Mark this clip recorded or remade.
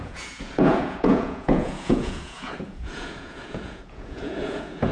remade